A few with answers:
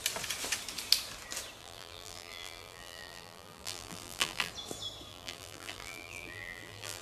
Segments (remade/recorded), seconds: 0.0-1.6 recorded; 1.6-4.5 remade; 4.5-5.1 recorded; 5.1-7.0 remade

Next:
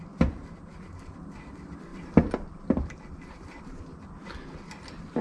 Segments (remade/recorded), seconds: 0.0-1.9 recorded; 1.9-3.6 remade; 3.6-5.2 recorded

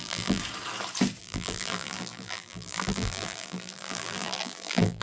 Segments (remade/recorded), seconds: 0.0-0.4 remade; 0.4-1.2 recorded; 1.2-5.0 remade

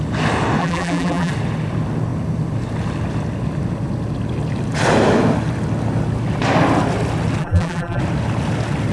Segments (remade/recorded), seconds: 0.0-0.6 recorded; 0.6-1.3 remade; 1.3-7.4 recorded; 7.4-8.0 remade; 8.0-8.9 recorded